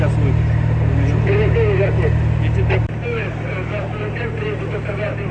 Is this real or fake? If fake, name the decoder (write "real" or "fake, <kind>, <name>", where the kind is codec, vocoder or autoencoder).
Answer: real